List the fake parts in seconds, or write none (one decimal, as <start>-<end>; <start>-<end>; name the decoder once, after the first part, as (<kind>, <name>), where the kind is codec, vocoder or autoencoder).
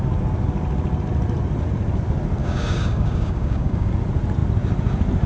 2.4-3.9 (codec, DAC)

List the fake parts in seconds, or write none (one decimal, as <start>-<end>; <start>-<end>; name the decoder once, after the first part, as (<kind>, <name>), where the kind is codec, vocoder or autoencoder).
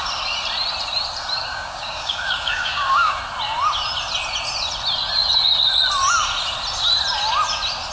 1.5-3.2 (codec, DAC)